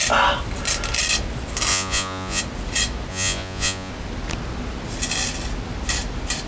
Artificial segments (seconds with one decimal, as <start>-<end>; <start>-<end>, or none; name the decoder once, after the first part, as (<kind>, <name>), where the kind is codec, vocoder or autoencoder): 1.7-2.4 (vocoder, Vocos); 3.1-3.9